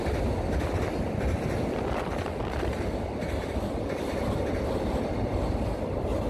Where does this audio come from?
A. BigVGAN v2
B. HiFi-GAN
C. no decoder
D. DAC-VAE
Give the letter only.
C